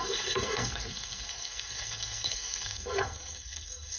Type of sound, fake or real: fake